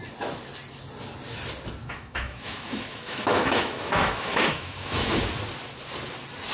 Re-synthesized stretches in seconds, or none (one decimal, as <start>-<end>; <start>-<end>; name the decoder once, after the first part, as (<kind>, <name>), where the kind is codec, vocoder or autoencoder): 1.8-5.1 (autoencoder, DAC-VAE)